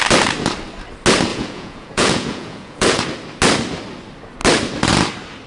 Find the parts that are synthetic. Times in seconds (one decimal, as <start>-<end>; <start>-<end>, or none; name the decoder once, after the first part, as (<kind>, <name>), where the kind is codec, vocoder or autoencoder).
1.3-3.0 (vocoder, Vocos)